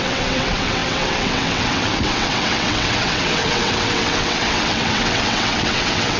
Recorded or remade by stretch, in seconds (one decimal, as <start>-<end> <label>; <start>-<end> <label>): 0.0-6.2 remade